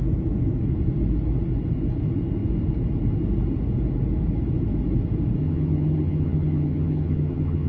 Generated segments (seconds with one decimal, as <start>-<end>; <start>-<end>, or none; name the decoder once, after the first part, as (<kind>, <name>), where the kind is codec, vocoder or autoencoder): 5.4-7.7 (vocoder, HiFi-GAN)